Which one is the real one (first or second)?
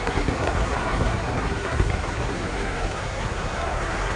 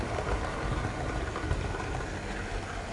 second